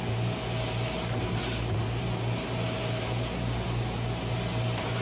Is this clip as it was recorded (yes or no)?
yes